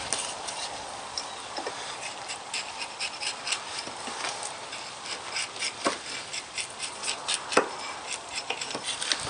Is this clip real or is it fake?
real